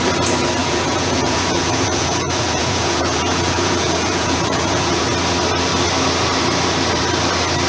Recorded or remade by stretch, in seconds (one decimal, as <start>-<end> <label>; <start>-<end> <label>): 0.0-0.6 recorded; 0.6-5.0 remade; 5.0-7.7 recorded